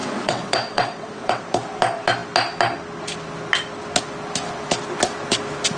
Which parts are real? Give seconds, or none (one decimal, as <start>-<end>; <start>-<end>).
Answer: 1.4-5.8